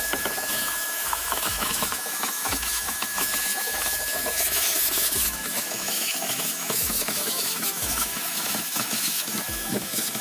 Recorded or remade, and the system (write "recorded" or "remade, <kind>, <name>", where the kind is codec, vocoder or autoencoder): remade, autoencoder, DAC-VAE